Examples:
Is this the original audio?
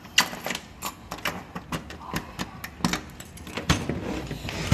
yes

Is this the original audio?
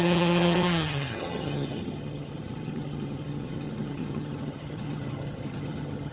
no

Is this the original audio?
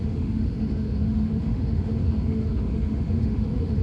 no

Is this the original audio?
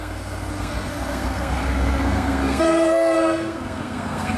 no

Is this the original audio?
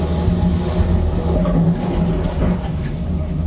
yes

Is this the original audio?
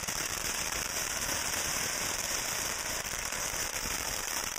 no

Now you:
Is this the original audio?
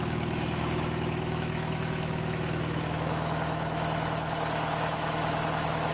no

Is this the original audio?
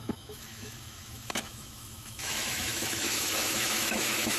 no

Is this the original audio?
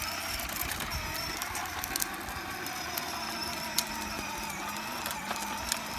yes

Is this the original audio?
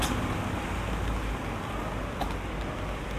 yes